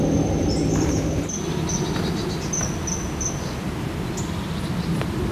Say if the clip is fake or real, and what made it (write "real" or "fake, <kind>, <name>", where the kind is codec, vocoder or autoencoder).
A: real